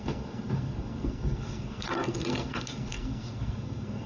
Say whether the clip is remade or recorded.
remade